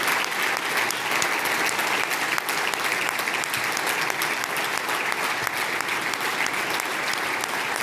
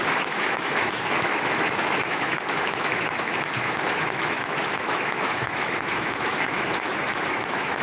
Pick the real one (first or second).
first